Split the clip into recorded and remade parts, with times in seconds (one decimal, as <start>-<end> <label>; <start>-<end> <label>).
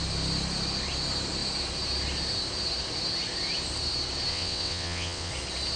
0.0-4.3 recorded; 4.3-5.3 remade; 5.3-5.8 recorded